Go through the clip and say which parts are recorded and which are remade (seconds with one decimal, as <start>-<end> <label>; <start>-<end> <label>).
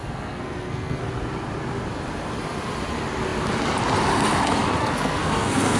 0.0-1.0 remade; 1.0-4.8 recorded; 4.8-5.8 remade